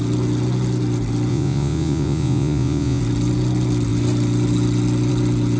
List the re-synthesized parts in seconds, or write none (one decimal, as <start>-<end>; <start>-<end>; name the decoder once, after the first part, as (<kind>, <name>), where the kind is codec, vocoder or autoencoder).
1.3-3.0 (vocoder, Vocos)